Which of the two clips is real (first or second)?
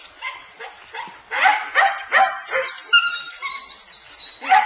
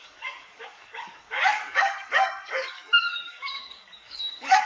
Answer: first